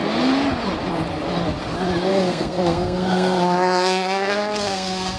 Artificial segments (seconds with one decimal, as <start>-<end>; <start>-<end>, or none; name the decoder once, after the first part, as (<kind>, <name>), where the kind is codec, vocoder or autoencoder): 2.1-5.2 (codec, SNAC)

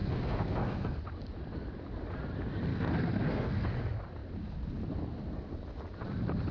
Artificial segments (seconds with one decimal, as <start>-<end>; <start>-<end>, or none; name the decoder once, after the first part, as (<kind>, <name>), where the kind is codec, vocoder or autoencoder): 0.0-1.0 (codec, SNAC); 2.7-3.7

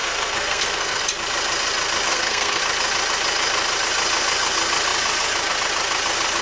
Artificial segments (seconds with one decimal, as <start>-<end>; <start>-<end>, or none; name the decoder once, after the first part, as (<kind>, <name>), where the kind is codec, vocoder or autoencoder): 0.0-1.0 (codec, SNAC); 2.1-2.6

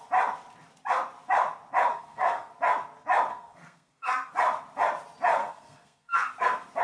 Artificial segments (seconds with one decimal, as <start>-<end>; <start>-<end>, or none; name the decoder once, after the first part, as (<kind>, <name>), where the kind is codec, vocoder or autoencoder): 1.9-2.5 (codec, SNAC); 3.3-4.3; 5.4-6.3

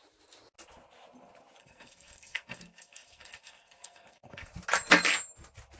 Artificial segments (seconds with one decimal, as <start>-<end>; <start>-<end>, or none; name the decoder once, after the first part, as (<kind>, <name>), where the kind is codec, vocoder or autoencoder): 1.6-4.5 (codec, SNAC)